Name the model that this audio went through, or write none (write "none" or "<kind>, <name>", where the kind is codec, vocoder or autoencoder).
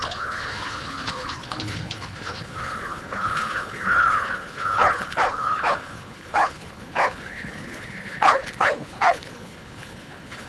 codec, HILCodec